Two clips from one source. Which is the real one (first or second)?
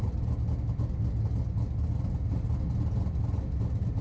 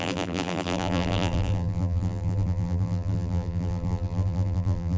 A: first